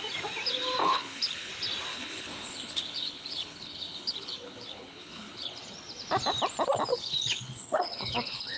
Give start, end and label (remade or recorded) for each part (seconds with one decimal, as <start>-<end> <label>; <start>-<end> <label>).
0.0-0.8 recorded; 0.8-1.5 remade; 1.5-1.9 recorded; 1.9-5.6 remade; 5.6-6.9 recorded; 6.9-8.6 remade